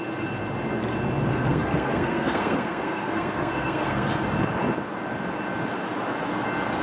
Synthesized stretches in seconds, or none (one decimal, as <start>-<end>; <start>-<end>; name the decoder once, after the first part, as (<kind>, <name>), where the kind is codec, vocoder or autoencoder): 1.3-4.1 (codec, SNAC)